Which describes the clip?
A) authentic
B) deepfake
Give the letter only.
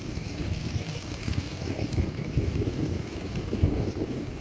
B